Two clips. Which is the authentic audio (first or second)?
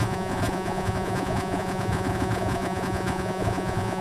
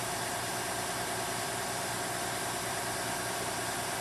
second